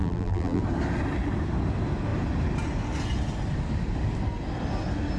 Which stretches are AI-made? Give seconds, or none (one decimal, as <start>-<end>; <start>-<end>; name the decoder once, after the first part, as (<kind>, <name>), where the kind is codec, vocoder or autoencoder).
0.0-0.6 (vocoder, BigVGAN v2)